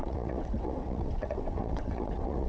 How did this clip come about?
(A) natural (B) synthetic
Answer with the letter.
B